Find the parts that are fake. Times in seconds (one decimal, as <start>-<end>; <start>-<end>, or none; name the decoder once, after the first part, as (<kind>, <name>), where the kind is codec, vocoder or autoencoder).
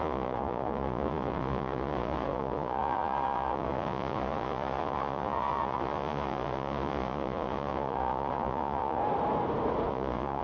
0.0-9.0 (vocoder, Vocos); 9.9-10.4